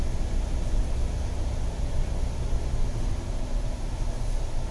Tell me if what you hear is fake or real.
real